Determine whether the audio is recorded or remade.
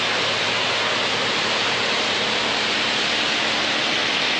recorded